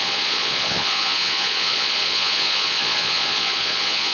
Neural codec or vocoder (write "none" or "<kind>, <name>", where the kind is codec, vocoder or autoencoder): vocoder, Vocos